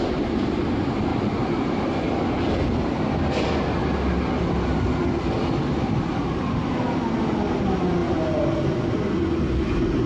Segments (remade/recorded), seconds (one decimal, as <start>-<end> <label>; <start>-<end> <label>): 0.0-10.1 recorded